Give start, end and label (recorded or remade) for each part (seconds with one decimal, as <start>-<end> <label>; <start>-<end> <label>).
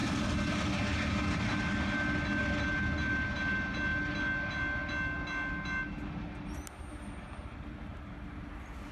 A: 0.0-8.9 recorded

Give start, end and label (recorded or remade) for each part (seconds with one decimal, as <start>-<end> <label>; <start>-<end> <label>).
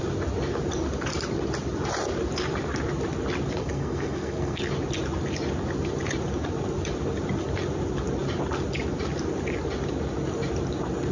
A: 0.0-3.6 recorded; 3.6-4.6 remade; 4.6-11.1 recorded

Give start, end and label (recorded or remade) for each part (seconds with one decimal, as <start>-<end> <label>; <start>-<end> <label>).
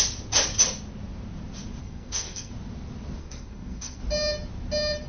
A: 0.0-1.8 recorded; 1.8-2.5 remade; 2.5-3.2 recorded; 3.2-4.0 remade; 4.0-5.1 recorded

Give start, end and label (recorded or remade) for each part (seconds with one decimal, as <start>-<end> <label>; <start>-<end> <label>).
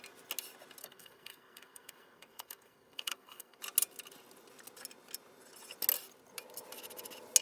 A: 0.0-0.8 recorded; 0.8-3.6 remade; 3.6-7.4 recorded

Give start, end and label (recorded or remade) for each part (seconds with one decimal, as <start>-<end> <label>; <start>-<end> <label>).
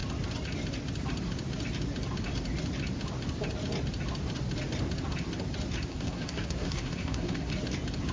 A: 0.0-5.9 recorded; 5.9-7.5 remade; 7.5-8.1 recorded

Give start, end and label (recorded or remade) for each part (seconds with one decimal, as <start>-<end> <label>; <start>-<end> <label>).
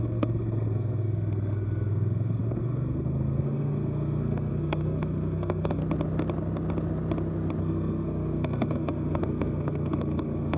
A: 0.0-5.8 remade; 5.8-7.6 recorded; 7.6-10.6 remade